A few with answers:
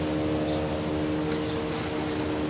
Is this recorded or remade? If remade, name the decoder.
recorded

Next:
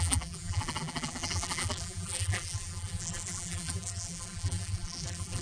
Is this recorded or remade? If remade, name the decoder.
remade, vocoder, BigVGAN v2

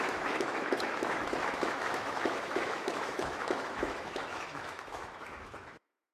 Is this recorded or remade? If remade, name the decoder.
remade, autoencoder, DAC-VAE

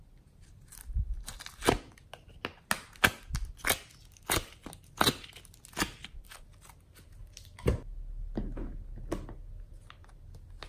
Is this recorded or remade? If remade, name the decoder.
recorded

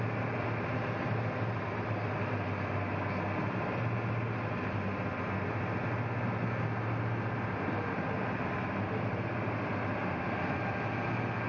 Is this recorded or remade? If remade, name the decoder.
recorded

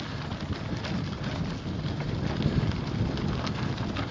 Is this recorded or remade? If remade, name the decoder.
recorded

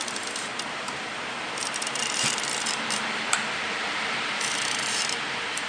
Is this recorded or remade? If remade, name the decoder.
remade, vocoder, BigVGAN v2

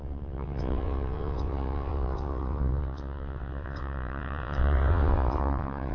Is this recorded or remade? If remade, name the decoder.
remade, vocoder, WaveNeXt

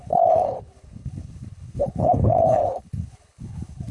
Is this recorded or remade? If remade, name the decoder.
remade, codec, HILCodec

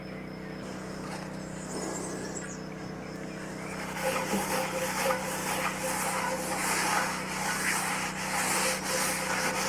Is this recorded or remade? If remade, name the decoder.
recorded